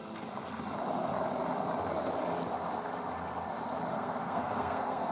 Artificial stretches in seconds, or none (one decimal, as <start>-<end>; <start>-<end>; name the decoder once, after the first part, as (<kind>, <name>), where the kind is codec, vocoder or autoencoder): 3.9-5.1 (codec, SNAC)